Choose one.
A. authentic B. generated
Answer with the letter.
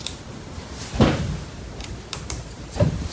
B